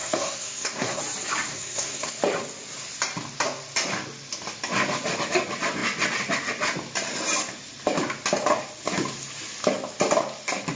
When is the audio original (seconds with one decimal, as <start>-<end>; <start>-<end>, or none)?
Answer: 1.0-1.5; 2.2-10.8